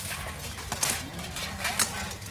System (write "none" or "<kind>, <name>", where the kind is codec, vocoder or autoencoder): none